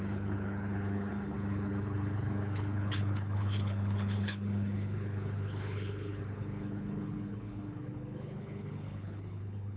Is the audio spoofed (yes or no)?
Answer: yes